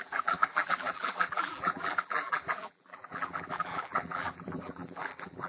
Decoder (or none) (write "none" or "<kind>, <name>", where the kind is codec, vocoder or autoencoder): vocoder, BigVGAN v2